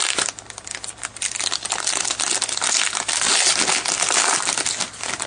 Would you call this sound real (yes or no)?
yes